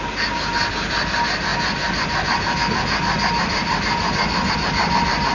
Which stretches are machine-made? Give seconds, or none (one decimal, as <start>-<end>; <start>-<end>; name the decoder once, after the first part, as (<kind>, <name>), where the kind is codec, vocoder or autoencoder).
none